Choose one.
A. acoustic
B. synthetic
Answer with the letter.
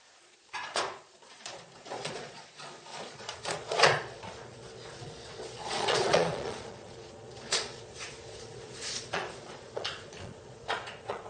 B